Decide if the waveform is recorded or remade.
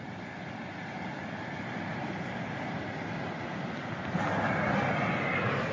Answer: recorded